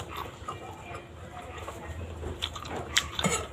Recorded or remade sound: remade